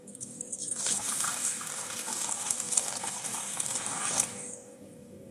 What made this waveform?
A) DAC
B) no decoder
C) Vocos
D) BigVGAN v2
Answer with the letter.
A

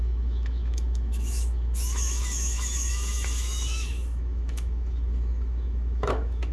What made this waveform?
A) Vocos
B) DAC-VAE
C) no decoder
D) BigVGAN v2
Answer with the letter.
B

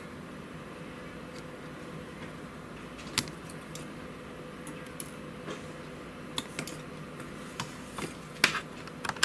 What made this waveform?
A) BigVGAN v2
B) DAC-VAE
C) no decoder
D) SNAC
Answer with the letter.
C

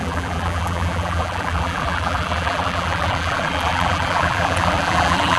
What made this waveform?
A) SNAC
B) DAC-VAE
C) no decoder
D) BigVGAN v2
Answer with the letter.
D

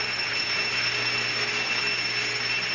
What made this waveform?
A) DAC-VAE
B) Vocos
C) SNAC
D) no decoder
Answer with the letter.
D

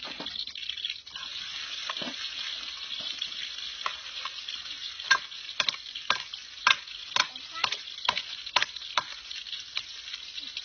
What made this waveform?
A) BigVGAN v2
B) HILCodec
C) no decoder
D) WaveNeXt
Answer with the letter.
C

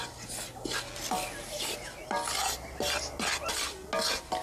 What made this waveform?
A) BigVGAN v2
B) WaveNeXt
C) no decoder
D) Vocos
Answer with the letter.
C